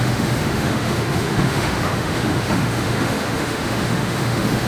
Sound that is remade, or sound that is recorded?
remade